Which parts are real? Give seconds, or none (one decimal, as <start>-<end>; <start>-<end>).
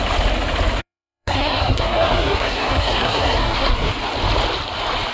0.0-0.8; 3.9-5.1